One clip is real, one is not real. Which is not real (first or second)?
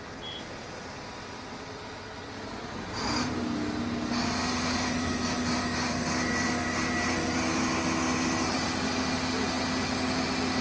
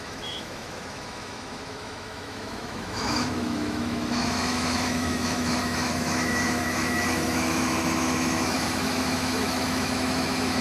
second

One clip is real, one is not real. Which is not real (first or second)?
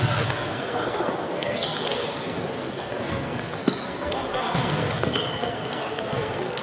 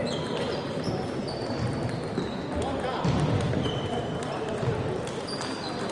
first